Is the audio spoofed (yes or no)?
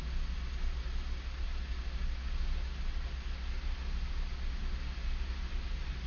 no